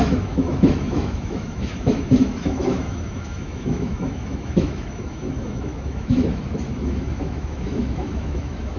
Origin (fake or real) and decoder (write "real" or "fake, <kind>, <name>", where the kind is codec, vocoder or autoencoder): fake, autoencoder, DAC-VAE